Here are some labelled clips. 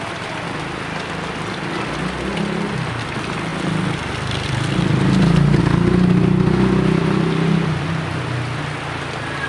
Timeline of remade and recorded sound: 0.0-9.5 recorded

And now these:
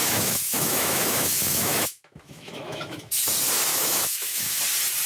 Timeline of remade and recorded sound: 0.0-3.1 remade; 3.1-3.7 recorded; 3.7-4.6 remade; 4.6-5.1 recorded

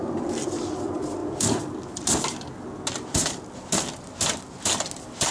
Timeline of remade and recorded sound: 0.0-5.3 recorded

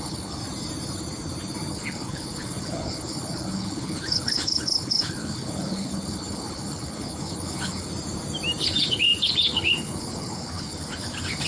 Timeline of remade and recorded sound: 0.0-0.4 remade; 0.4-1.7 recorded; 1.7-7.9 remade; 7.9-8.6 recorded; 8.6-11.5 remade

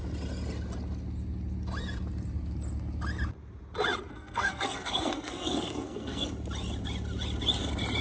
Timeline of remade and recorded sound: 0.0-4.1 recorded; 4.1-6.3 remade; 6.3-8.0 recorded

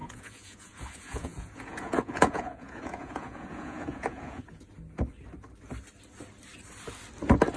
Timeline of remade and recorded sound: 0.0-4.6 remade; 4.6-7.6 recorded

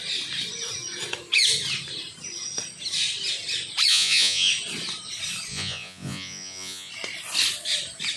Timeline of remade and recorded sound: 0.0-3.9 recorded; 3.9-4.5 remade; 4.5-5.5 recorded; 5.5-6.9 remade; 6.9-8.2 recorded